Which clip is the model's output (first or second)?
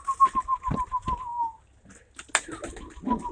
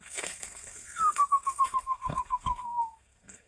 second